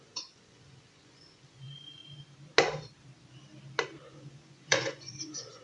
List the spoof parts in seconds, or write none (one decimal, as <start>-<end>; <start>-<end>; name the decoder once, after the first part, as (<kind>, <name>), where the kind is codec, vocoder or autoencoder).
0.0-2.0 (vocoder, Vocos); 4.1-5.6